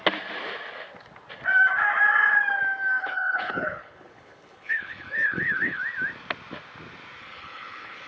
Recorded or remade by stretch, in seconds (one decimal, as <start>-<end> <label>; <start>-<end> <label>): 0.0-3.0 recorded; 3.0-5.8 remade; 5.8-7.2 recorded; 7.2-8.1 remade